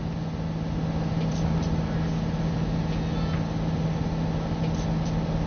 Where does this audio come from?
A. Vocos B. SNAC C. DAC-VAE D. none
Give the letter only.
D